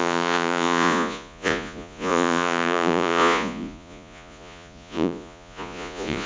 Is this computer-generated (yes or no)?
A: yes